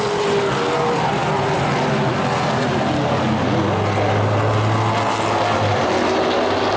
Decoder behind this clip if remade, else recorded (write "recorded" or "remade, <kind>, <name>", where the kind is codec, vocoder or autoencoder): recorded